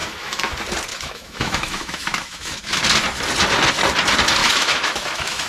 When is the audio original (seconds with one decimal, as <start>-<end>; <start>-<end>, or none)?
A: 0.5-0.9; 2.8-4.4